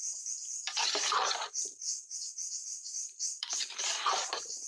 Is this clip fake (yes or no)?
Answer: yes